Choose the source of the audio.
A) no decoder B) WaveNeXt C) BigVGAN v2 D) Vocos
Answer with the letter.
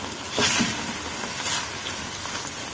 A